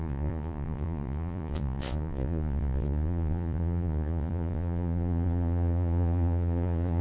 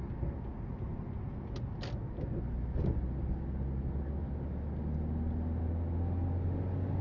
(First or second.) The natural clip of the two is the second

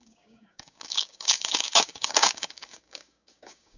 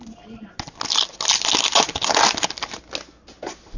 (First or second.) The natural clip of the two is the second